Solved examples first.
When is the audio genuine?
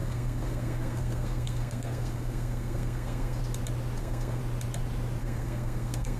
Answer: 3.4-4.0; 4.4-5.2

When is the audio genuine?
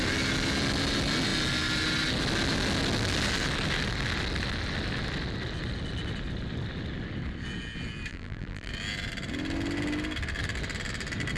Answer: 0.0-8.1; 8.7-11.4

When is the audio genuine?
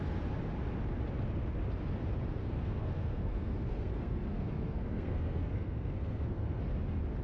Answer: 0.0-2.4; 6.6-7.2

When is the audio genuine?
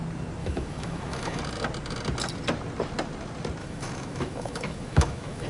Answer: 0.0-0.4; 1.4-3.6